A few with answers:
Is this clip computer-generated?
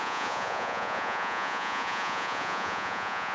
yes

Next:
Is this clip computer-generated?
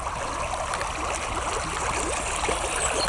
no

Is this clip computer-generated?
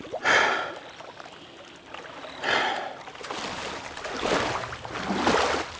no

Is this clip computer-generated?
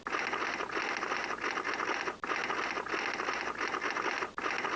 no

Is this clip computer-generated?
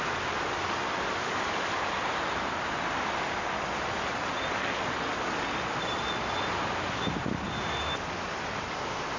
no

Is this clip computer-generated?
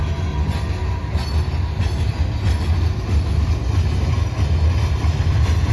no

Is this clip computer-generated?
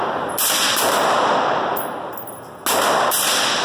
no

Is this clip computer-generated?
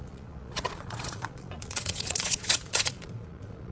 yes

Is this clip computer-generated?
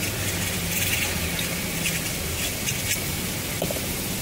no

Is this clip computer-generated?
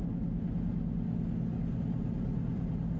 no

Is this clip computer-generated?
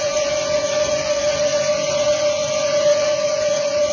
yes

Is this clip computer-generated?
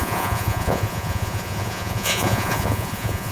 yes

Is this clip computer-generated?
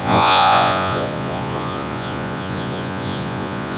yes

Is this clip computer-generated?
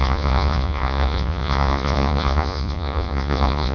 yes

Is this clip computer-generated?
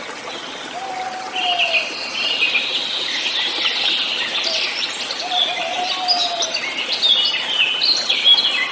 no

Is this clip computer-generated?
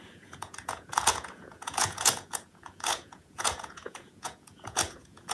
yes